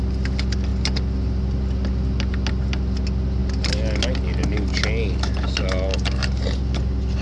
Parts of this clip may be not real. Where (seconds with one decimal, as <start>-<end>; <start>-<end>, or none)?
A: 3.4-4.0